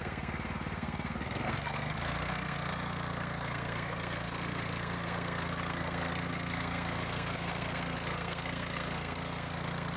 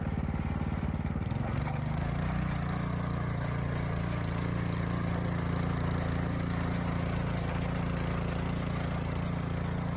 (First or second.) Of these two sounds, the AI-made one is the first